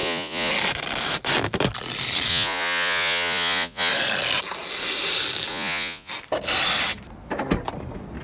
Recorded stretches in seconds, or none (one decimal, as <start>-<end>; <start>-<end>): 0.5-2.3; 3.9-5.5; 6.1-8.2